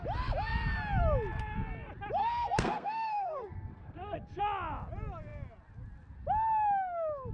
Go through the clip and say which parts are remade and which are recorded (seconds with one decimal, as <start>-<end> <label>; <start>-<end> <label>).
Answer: 0.0-2.2 recorded; 2.2-4.4 remade; 4.4-7.3 recorded